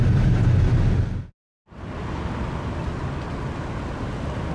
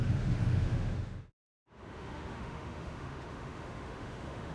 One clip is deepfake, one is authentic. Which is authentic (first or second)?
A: first